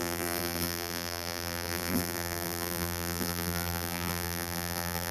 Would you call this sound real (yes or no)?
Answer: no